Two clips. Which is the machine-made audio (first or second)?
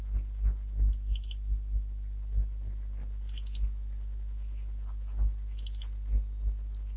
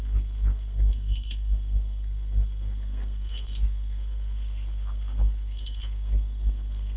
second